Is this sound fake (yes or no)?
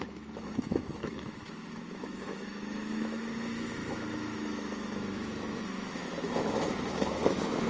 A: yes